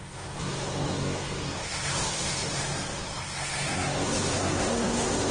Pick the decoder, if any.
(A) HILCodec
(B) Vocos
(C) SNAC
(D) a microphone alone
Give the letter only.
C